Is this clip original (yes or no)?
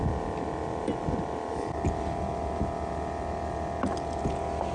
yes